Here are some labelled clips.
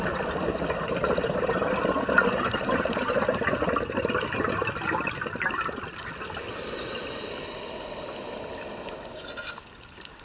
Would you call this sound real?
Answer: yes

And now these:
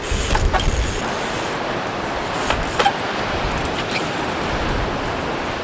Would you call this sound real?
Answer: no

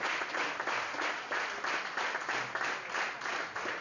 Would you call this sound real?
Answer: yes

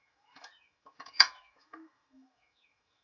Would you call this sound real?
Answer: no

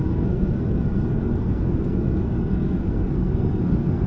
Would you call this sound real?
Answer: no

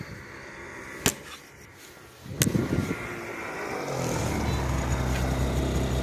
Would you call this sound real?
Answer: yes